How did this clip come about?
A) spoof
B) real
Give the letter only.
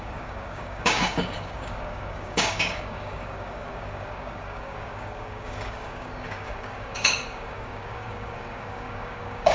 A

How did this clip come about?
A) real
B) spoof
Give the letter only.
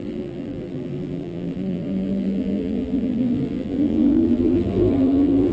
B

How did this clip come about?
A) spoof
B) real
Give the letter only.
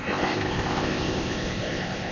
A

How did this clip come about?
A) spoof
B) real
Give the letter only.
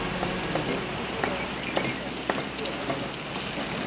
B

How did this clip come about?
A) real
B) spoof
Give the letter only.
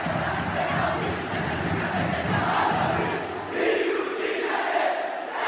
A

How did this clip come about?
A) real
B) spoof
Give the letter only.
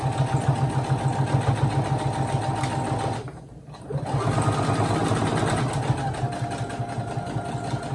A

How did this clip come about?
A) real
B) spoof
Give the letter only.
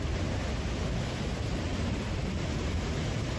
A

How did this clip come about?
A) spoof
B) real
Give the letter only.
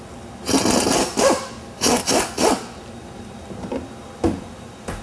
B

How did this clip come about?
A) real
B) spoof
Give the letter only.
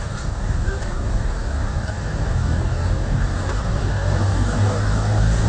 B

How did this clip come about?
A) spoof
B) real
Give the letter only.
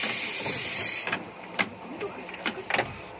B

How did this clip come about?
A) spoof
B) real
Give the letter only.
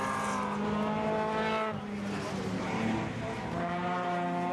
B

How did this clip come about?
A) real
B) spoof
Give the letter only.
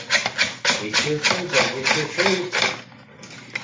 A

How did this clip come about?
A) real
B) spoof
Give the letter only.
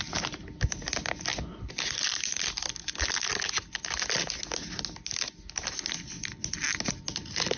A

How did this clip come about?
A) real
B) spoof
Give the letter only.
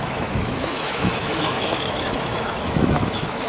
B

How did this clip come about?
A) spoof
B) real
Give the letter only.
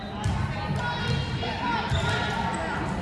B